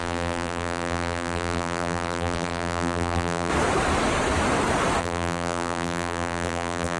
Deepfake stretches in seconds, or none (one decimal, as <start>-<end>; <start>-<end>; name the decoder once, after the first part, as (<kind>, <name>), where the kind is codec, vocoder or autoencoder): 0.0-3.5 (vocoder, BigVGAN v2); 5.0-7.0